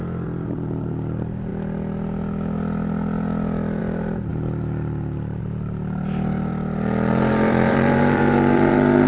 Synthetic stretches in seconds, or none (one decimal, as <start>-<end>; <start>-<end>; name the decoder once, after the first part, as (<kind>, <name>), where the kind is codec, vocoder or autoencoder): 0.0-1.5 (vocoder, BigVGAN v2); 3.8-4.3; 5.4-6.5; 7.1-9.1